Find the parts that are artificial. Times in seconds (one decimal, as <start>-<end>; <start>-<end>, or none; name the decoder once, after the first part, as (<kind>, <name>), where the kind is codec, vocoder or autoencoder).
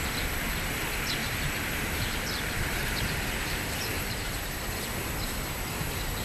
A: 1.2-4.4 (vocoder, BigVGAN v2)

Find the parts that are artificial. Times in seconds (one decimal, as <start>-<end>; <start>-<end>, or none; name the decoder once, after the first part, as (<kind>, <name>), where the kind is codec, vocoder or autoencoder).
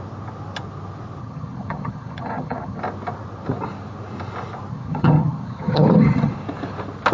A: 1.2-2.8 (vocoder, HiFi-GAN); 4.7-6.3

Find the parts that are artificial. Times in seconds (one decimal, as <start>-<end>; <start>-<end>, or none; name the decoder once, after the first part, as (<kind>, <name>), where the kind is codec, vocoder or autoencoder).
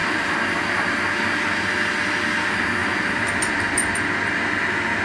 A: 0.0-0.6 (vocoder, BigVGAN v2); 2.8-3.9